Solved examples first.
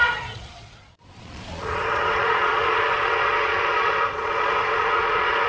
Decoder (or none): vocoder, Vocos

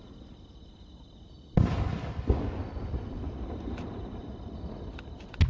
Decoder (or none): none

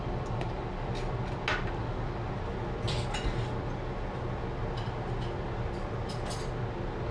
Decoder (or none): none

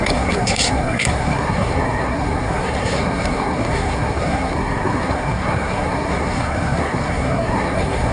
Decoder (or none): codec, SNAC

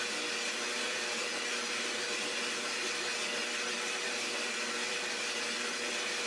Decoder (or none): none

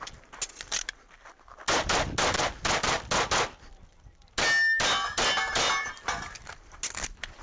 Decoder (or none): none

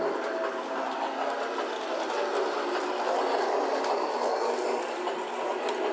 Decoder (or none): none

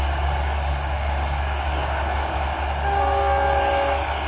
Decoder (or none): codec, DAC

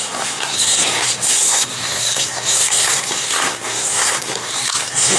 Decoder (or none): codec, SNAC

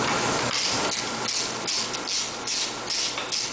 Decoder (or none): none